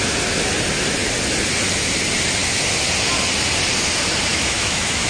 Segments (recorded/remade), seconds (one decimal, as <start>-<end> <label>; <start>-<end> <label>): 0.0-4.3 recorded; 4.3-5.1 remade